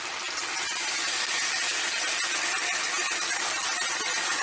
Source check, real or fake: real